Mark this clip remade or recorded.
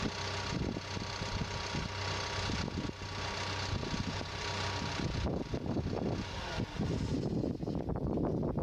recorded